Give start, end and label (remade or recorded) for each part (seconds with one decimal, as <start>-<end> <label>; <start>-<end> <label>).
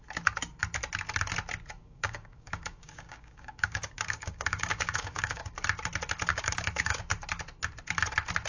0.0-1.8 recorded; 1.8-5.5 remade; 5.5-6.3 recorded; 6.3-7.0 remade; 7.0-8.5 recorded